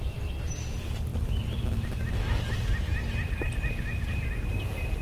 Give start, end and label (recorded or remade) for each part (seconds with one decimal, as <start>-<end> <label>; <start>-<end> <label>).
0.0-5.0 recorded